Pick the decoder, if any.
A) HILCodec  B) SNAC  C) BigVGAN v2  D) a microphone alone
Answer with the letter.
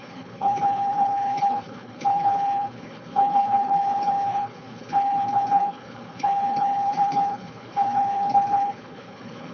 A